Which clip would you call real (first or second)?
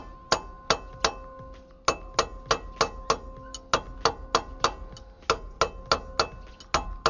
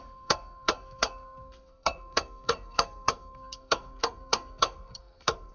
first